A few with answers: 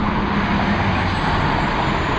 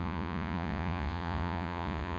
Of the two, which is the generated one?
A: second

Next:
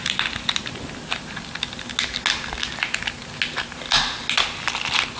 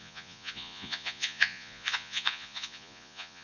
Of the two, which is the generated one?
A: second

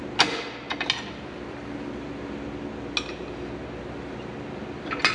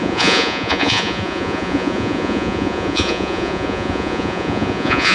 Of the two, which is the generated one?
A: second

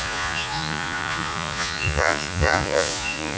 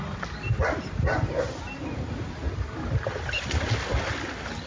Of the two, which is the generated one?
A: first